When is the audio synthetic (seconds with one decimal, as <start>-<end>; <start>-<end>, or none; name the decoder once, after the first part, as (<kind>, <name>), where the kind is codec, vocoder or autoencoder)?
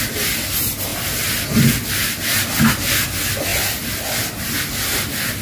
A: none